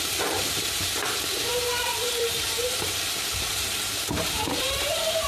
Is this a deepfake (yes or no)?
yes